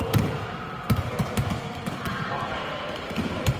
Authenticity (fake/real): real